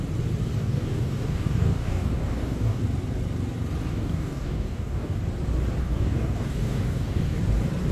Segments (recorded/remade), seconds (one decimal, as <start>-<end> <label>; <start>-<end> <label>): 0.0-0.6 recorded; 0.6-2.8 remade; 2.8-3.9 recorded; 3.9-5.2 remade; 5.2-5.8 recorded; 5.8-7.4 remade; 7.4-7.9 recorded